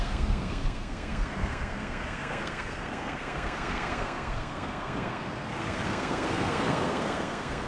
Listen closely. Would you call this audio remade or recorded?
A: remade